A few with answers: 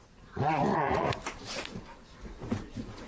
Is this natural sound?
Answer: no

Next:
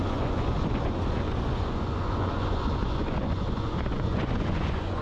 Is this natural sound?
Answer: no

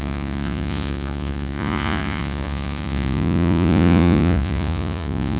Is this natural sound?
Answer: no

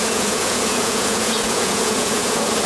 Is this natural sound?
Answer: no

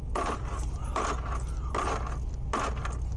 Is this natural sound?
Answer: yes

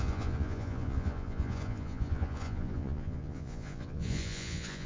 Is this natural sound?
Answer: no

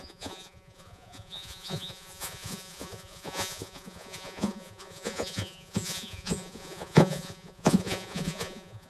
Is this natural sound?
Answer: no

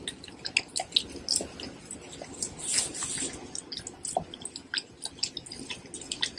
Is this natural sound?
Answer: yes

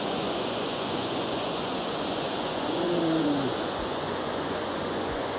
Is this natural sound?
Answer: no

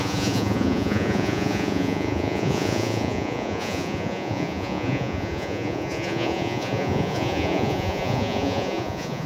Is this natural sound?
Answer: no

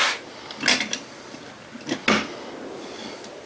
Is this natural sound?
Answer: yes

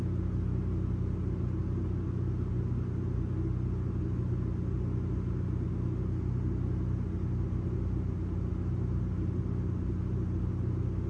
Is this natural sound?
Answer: yes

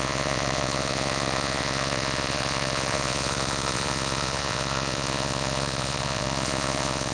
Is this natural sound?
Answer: no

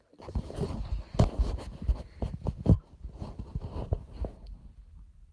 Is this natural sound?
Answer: yes